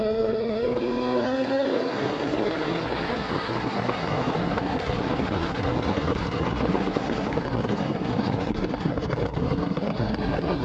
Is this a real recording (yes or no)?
no